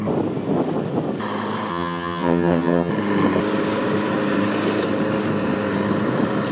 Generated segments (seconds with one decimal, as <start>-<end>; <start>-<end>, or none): 1.7-2.9